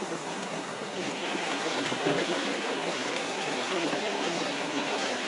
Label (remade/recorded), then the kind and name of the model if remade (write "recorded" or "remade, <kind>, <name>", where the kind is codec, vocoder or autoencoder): remade, codec, SNAC